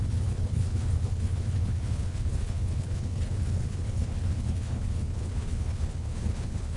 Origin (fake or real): fake